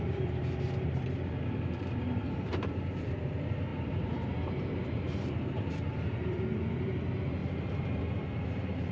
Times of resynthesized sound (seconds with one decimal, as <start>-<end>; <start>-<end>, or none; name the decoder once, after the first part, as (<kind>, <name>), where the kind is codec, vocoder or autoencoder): 0.0-8.9 (vocoder, BigVGAN v2)